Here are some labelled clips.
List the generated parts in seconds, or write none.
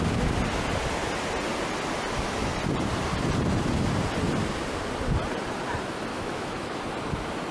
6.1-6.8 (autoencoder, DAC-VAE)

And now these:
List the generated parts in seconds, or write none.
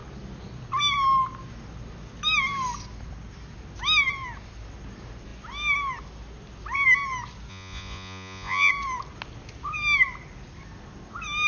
7.5-8.7 (vocoder, Vocos)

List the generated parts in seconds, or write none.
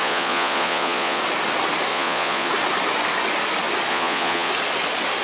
0.0-1.2 (vocoder, Vocos); 1.9-2.5; 3.9-4.5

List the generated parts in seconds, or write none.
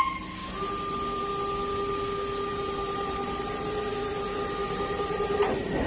2.5-3.6 (vocoder, BigVGAN v2); 4.6-5.9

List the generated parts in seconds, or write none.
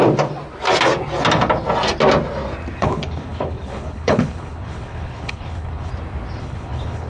2.8-5.9 (codec, HILCodec); 6.4-7.1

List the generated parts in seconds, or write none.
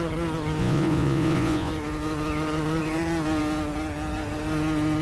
0.6-1.7 (vocoder, Vocos)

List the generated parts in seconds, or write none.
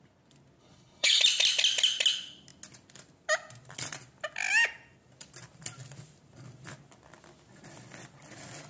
0.6-1.2 (codec, HILCodec)